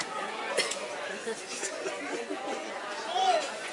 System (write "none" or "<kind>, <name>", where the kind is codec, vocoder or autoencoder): vocoder, Vocos